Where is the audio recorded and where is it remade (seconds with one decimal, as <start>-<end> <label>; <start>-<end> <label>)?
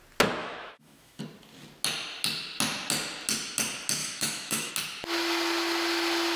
0.0-0.4 recorded; 0.4-1.2 remade; 1.2-4.0 recorded; 4.0-4.7 remade; 4.7-6.4 recorded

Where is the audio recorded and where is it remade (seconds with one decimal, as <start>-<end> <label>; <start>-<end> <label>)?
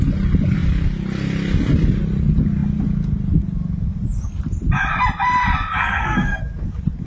0.0-5.8 recorded; 5.8-6.4 remade; 6.4-7.1 recorded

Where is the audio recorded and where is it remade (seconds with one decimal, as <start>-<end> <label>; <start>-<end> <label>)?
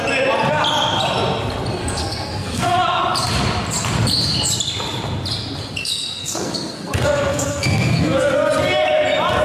0.0-1.8 recorded; 1.8-3.0 remade; 3.0-5.8 recorded; 5.8-8.3 remade; 8.3-9.4 recorded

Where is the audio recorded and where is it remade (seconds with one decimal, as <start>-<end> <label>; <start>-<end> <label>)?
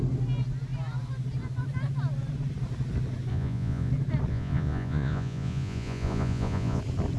0.0-3.3 recorded; 3.3-3.9 remade; 3.9-4.3 recorded; 4.3-6.8 remade; 6.8-7.2 recorded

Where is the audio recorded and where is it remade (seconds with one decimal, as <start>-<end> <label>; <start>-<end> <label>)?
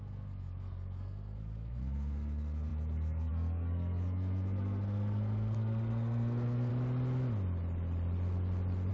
0.0-6.7 remade; 6.7-8.9 recorded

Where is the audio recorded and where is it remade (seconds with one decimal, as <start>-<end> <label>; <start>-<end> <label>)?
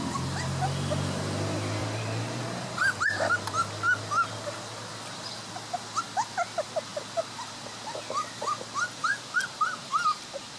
0.0-1.8 recorded; 1.8-2.4 remade; 2.4-9.1 recorded; 9.1-10.6 remade